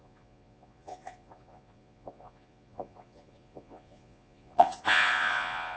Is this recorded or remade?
remade